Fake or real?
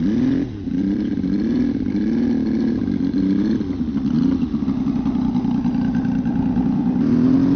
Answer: fake